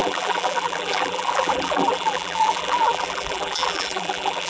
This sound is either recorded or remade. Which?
remade